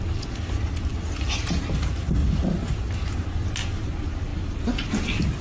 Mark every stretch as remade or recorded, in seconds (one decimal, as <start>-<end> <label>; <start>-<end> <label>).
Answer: 0.0-2.2 recorded; 2.2-2.9 remade; 2.9-4.3 recorded; 4.3-4.9 remade; 4.9-5.4 recorded